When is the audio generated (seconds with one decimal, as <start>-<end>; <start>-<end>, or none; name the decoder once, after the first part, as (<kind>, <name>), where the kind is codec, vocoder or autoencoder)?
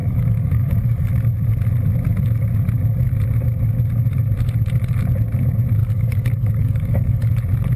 0.0-1.1 (codec, DAC); 5.8-7.3